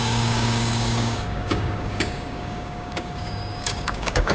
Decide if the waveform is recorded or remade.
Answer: remade